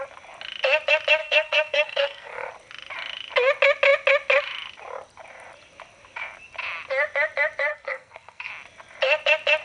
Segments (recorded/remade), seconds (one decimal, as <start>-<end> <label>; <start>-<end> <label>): 0.0-1.2 recorded; 1.2-2.5 remade; 2.5-7.7 recorded; 7.7-8.5 remade; 8.5-9.6 recorded